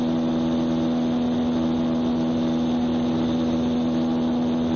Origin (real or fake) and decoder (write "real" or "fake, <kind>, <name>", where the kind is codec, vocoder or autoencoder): real